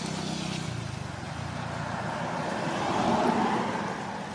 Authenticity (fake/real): real